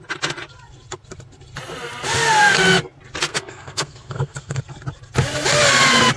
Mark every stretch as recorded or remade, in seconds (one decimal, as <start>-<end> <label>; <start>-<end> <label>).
0.0-3.3 recorded; 3.3-4.6 remade; 4.6-6.2 recorded

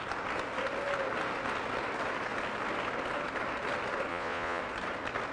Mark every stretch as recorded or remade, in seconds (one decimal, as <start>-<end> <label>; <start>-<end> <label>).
0.0-4.1 recorded; 4.1-4.6 remade; 4.6-5.3 recorded

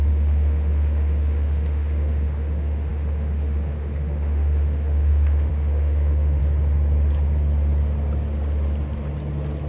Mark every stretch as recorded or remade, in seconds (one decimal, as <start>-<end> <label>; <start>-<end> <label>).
0.0-6.4 remade; 6.4-9.7 recorded

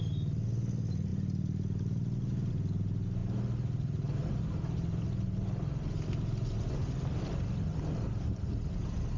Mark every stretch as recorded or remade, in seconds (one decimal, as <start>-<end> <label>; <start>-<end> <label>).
0.0-9.2 recorded

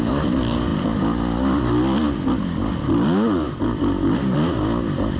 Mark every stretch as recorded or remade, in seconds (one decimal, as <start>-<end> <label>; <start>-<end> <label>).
0.0-5.2 recorded

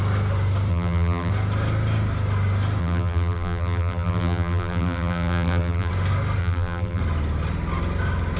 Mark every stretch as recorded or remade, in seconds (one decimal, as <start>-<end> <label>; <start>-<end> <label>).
0.0-0.7 recorded; 0.7-1.3 remade; 1.3-2.8 recorded; 2.8-5.9 remade; 5.9-6.4 recorded; 6.4-7.0 remade; 7.0-8.4 recorded

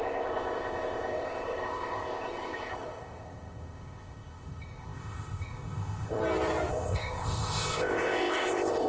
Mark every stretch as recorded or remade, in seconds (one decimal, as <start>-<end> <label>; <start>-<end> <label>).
0.0-6.2 remade; 6.2-6.7 recorded; 6.7-8.9 remade

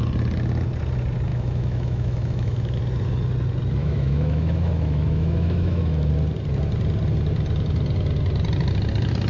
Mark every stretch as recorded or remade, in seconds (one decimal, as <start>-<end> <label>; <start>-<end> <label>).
0.0-1.3 recorded; 1.3-2.8 remade; 2.8-3.8 recorded; 3.8-6.1 remade; 6.1-9.3 recorded